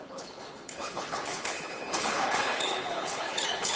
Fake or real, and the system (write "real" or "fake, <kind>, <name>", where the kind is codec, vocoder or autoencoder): fake, codec, HILCodec